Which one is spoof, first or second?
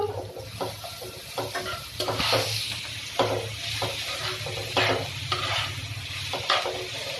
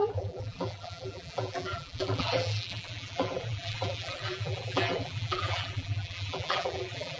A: second